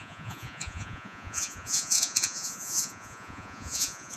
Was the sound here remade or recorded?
remade